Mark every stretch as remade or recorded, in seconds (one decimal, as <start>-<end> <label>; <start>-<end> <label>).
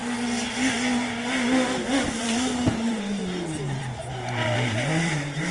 0.0-2.2 recorded; 2.2-3.2 remade; 3.2-3.8 recorded; 3.8-5.5 remade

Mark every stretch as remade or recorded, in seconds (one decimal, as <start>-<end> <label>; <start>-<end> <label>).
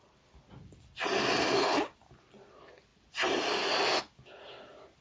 0.0-5.0 recorded